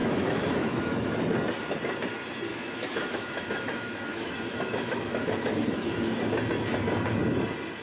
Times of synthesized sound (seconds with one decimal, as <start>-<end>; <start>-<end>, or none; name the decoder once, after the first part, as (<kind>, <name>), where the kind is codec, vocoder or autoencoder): 0.0-1.2 (autoencoder, DAC-VAE); 2.5-6.2